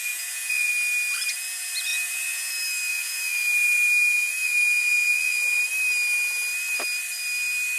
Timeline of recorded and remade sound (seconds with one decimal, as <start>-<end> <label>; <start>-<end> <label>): 0.0-0.7 remade; 0.7-1.9 recorded; 1.9-2.5 remade; 2.5-2.9 recorded; 2.9-5.6 remade; 5.6-7.8 recorded